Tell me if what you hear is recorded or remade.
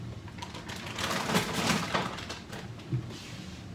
recorded